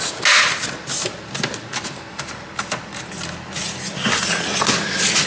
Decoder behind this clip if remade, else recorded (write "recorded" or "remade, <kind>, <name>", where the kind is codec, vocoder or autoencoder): recorded